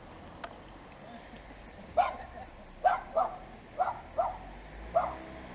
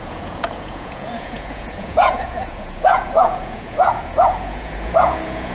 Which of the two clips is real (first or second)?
first